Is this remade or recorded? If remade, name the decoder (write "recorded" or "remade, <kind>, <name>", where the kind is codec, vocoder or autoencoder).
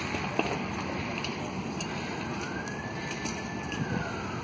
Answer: recorded